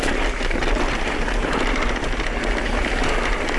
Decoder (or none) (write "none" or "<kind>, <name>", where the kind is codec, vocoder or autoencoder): none